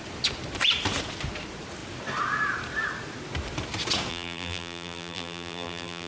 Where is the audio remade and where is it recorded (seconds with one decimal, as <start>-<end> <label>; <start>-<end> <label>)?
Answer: 0.0-4.1 recorded; 4.1-6.1 remade